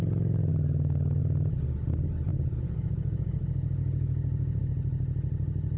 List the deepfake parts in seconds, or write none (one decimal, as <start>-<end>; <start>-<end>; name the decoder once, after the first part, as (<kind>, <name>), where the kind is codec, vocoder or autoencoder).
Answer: 2.3-4.6 (vocoder, Vocos)